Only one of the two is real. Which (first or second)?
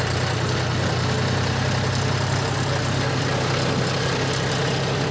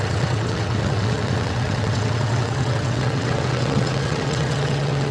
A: first